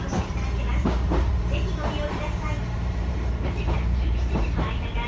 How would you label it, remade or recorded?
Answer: remade